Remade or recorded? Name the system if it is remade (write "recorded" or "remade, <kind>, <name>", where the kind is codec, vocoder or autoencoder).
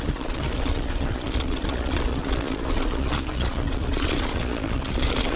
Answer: remade, vocoder, Vocos